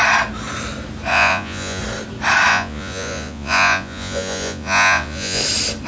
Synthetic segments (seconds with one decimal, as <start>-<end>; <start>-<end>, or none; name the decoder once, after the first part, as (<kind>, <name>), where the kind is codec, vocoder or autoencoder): 1.1-1.8 (vocoder, Vocos); 2.5-5.4